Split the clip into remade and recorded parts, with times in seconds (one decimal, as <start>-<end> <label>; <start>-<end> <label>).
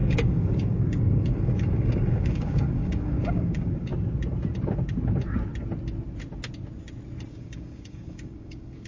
0.0-3.9 remade; 3.9-7.3 recorded; 7.3-8.9 remade